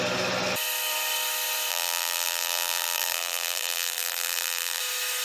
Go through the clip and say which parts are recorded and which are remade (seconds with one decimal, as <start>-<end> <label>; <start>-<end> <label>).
0.0-1.7 recorded; 1.7-4.8 remade; 4.8-5.2 recorded